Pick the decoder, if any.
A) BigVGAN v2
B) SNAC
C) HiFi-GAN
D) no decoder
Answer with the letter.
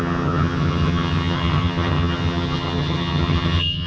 C